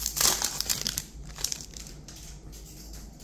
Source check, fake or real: fake